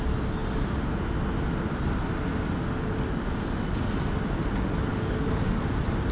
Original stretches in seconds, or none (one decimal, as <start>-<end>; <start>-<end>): 0.0-4.9; 5.6-6.1